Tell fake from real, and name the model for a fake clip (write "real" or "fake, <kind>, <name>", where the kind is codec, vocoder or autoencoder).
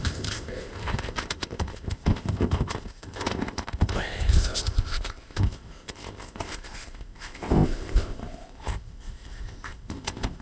fake, codec, ZipCodec